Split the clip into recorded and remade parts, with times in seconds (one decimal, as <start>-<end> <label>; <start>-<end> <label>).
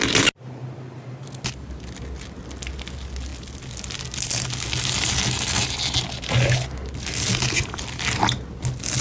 0.0-9.0 recorded